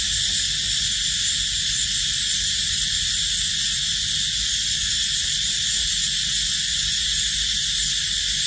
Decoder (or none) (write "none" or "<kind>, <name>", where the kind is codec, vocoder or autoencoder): none